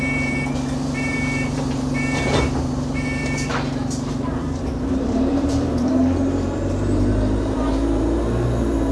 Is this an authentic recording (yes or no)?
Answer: no